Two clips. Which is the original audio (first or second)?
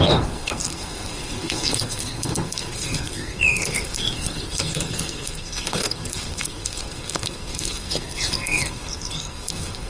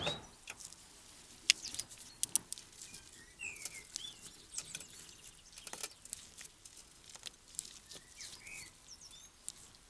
second